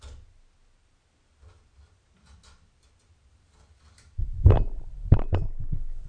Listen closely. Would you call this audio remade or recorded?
recorded